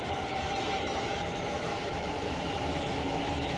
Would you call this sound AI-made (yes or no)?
yes